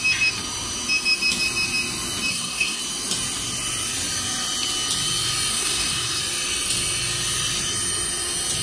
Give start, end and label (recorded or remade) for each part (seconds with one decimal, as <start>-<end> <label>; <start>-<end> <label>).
0.0-2.3 recorded; 2.3-2.8 remade; 2.8-5.5 recorded; 5.5-6.2 remade; 6.2-8.6 recorded